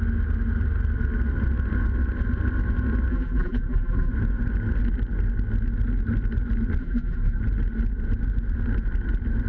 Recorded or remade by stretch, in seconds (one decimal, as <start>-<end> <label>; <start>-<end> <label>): 0.0-3.1 recorded; 3.1-4.1 remade; 4.1-6.8 recorded; 6.8-7.4 remade; 7.4-9.5 recorded